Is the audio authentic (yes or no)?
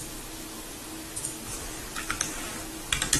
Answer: yes